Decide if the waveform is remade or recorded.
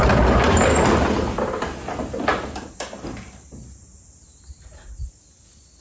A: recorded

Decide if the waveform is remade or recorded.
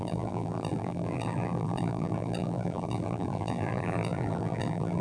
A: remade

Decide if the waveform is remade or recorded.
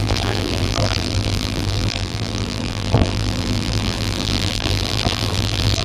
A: remade